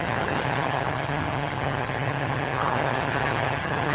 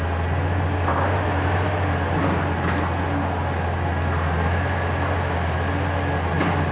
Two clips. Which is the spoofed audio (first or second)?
first